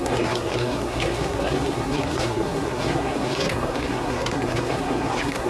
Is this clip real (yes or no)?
no